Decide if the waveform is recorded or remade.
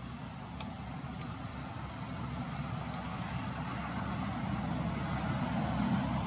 recorded